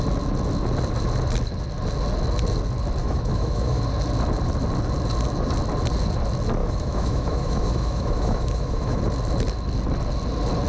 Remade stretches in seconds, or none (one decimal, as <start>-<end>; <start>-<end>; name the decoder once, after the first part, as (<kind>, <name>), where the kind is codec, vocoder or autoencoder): 3.0-3.8 (autoencoder, DAC-VAE); 6.6-9.0